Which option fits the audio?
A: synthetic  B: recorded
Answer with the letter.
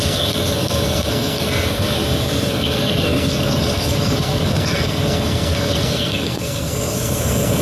A